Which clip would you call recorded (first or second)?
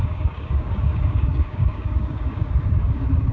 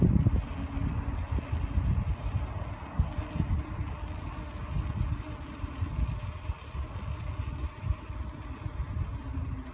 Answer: second